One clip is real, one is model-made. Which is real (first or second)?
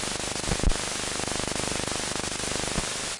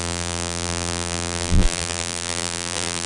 first